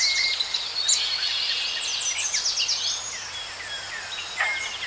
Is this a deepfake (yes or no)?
no